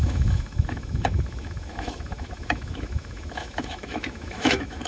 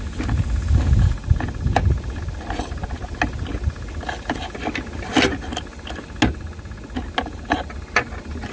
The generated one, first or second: first